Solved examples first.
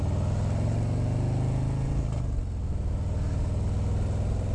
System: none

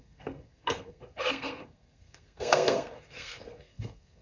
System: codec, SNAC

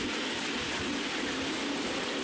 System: none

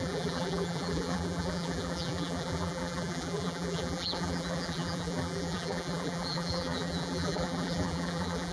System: vocoder, BigVGAN v2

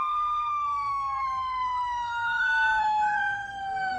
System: codec, SNAC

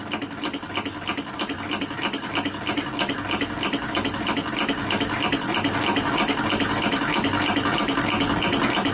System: none